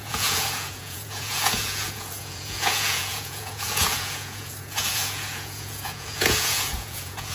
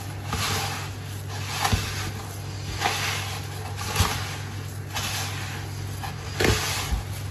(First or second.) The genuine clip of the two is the second